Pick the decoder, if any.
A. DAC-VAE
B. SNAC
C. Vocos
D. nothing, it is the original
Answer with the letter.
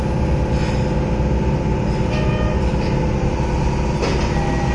D